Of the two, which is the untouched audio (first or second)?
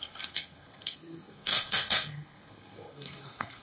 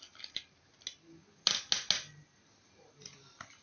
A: second